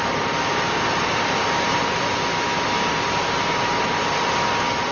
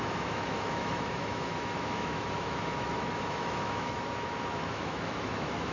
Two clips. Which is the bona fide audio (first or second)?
first